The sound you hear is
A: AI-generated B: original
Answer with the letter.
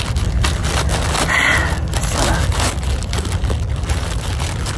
B